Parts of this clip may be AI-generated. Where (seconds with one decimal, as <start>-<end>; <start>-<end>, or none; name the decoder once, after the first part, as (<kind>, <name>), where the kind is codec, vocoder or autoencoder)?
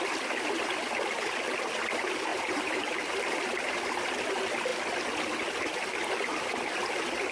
2.3-3.0 (vocoder, BigVGAN v2)